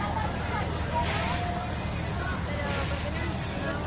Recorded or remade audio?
recorded